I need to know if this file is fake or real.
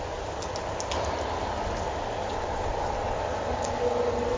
real